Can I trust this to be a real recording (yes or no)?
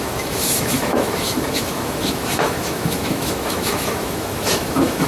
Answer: no